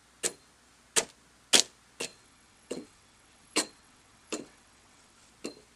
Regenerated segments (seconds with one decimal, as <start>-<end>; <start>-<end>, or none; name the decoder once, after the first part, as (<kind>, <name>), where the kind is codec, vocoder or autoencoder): 2.1-5.3 (vocoder, WaveNeXt)